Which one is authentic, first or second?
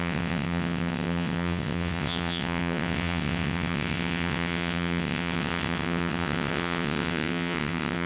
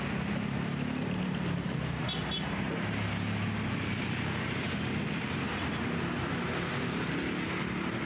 second